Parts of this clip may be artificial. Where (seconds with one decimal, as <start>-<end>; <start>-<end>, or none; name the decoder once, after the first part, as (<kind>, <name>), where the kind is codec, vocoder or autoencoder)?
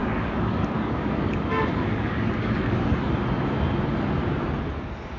0.0-3.1 (codec, DAC)